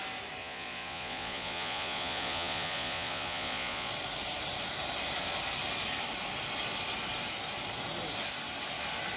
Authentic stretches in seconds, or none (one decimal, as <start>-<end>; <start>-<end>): 0.0-0.4; 3.9-9.2